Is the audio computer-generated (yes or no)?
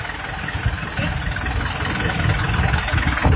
no